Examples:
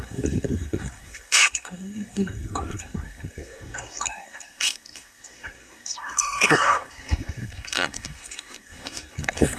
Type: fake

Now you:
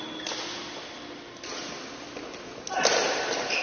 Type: real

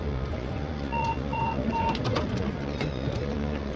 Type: fake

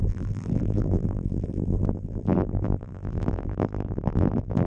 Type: fake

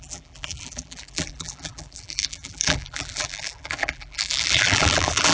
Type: fake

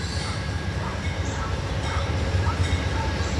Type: fake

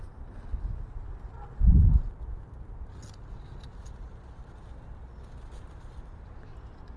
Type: real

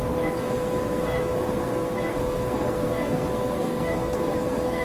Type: fake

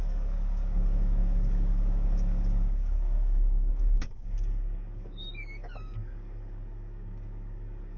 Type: fake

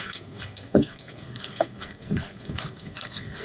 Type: fake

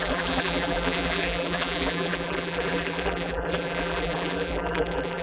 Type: fake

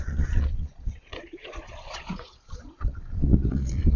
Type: fake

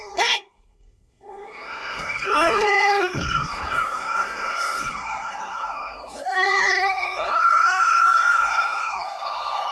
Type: fake